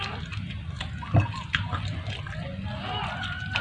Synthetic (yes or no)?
no